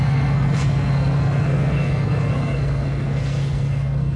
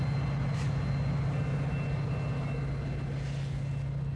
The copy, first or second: first